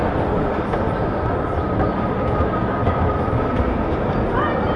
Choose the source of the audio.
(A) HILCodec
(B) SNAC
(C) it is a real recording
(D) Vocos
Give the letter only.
C